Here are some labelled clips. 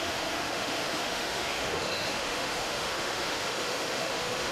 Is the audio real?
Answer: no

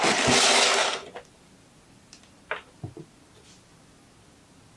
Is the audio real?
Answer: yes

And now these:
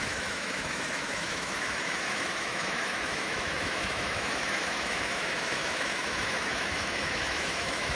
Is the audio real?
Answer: no